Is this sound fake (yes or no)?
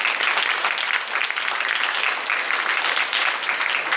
no